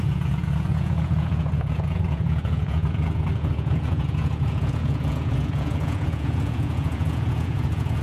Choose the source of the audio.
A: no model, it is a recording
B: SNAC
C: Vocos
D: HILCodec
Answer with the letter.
C